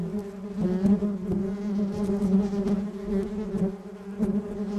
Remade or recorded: recorded